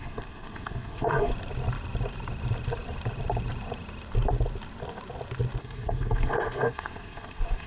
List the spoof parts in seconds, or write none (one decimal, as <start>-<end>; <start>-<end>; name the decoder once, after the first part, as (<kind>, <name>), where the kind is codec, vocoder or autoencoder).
0.0-1.3 (codec, SNAC); 5.6-7.7